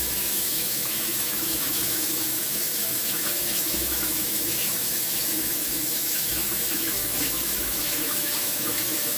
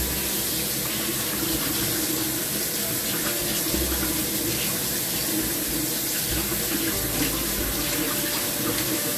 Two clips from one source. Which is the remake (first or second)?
first